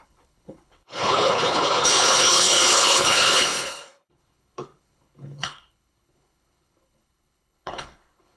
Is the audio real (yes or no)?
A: no